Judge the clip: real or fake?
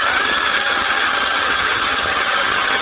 fake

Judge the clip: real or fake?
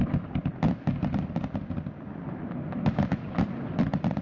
real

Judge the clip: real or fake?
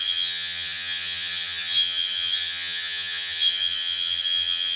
fake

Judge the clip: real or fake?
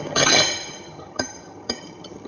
fake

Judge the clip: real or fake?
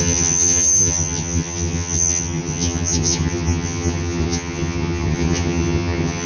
fake